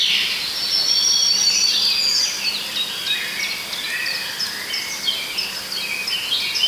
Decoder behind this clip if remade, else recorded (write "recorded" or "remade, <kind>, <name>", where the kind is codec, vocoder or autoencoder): recorded